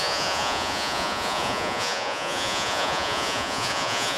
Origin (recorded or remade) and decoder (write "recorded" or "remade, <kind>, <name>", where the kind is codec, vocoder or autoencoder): remade, vocoder, Vocos